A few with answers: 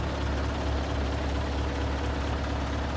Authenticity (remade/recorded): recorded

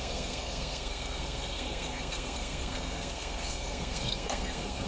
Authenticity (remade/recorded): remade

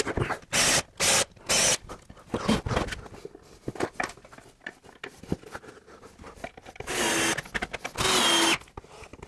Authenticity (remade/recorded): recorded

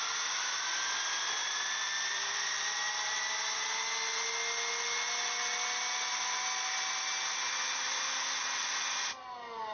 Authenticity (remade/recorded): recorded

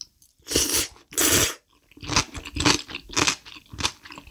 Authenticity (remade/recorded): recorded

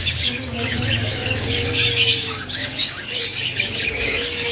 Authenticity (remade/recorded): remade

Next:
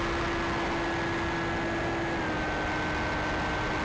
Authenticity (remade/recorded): recorded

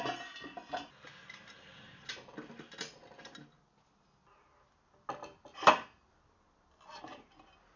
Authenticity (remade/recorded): recorded